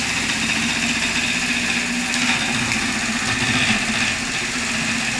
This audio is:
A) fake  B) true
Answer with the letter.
B